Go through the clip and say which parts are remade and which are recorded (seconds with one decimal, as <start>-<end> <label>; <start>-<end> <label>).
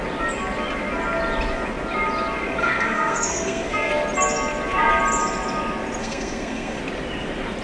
0.0-2.6 recorded; 2.6-3.9 remade; 3.9-6.0 recorded; 6.0-6.8 remade; 6.8-7.6 recorded